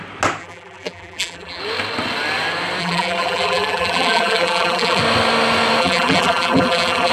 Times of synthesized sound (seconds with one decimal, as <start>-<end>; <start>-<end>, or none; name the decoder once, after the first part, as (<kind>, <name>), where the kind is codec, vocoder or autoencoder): 0.4-1.6 (vocoder, BigVGAN v2); 2.8-5.0; 5.8-7.1